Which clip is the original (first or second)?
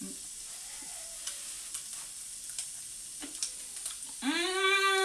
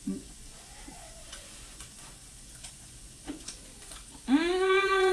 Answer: first